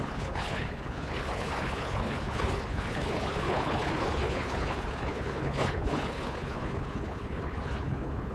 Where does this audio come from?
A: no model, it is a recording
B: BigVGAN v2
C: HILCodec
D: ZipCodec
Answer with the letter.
C